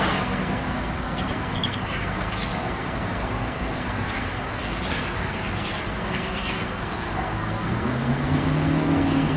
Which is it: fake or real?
fake